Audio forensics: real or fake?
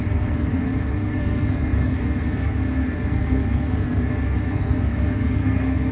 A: fake